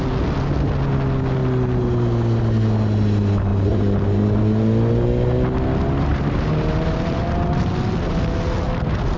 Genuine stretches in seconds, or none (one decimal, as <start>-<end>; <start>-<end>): 0.0-3.5; 4.4-6.1; 7.7-9.2

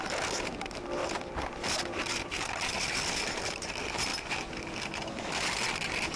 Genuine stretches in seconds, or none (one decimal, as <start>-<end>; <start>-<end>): 0.0-6.2

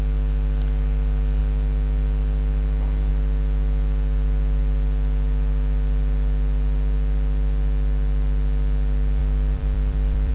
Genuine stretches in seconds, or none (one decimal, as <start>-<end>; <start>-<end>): 0.0-9.2

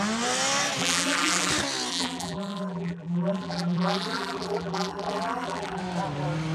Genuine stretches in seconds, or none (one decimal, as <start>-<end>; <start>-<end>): 0.0-0.8; 1.5-1.9; 5.8-6.5

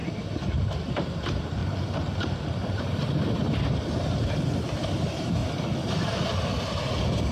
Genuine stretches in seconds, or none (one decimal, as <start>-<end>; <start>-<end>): 0.0-0.8; 1.6-2.2; 5.4-7.3

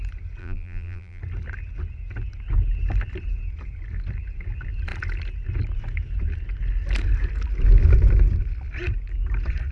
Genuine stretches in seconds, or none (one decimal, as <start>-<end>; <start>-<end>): 0.0-0.4; 1.2-9.7

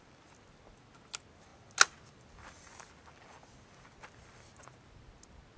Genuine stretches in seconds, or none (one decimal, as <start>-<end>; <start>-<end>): 0.0-5.6